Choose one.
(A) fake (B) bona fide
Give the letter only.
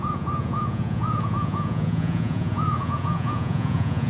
A